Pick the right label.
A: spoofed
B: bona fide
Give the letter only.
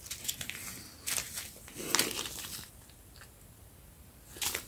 B